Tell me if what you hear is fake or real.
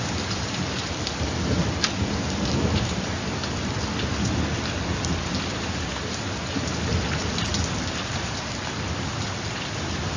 real